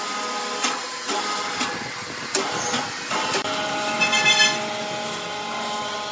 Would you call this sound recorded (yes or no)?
yes